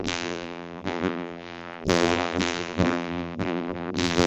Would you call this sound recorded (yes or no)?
no